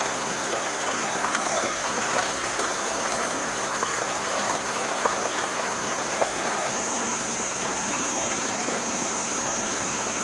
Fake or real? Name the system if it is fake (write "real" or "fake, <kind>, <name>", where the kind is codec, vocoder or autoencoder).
fake, codec, SNAC